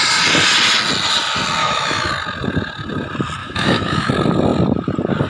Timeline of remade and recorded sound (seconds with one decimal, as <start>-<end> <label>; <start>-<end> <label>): 0.0-1.6 recorded; 1.6-2.1 remade; 2.1-3.4 recorded; 3.4-4.1 remade; 4.1-5.3 recorded